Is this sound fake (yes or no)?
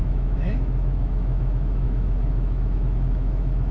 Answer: yes